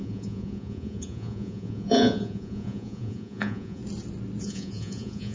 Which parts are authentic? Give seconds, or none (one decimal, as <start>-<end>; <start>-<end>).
3.8-4.4